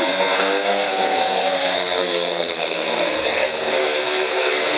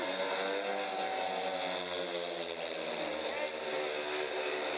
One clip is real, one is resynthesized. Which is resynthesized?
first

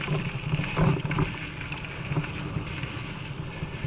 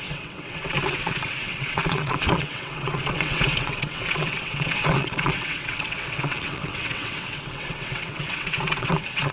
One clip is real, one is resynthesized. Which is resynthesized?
second